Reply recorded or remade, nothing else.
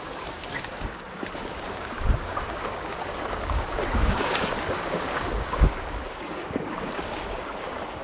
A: remade